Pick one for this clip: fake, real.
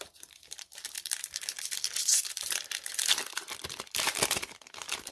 fake